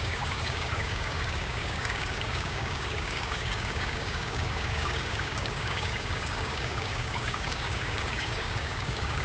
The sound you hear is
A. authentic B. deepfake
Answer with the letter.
B